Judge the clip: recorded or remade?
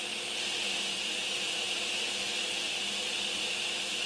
recorded